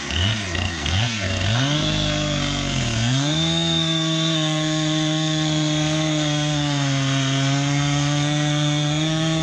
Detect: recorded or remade remade